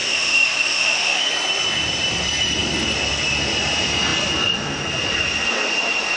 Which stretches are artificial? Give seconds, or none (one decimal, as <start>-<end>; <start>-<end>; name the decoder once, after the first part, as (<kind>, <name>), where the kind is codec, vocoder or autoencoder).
0.0-1.3 (autoencoder, DAC-VAE)